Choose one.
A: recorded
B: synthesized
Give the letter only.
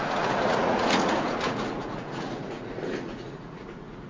B